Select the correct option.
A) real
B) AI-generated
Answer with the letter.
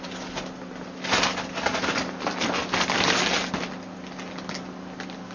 A